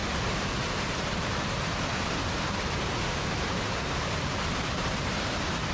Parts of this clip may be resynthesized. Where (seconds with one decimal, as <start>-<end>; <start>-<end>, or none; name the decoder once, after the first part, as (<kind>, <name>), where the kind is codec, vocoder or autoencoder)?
0.0-1.8 (vocoder, BigVGAN v2); 2.2-5.7